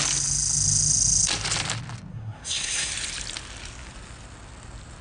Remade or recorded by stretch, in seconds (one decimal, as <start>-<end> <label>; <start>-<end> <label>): 0.0-2.1 recorded; 2.1-2.9 remade; 2.9-5.0 recorded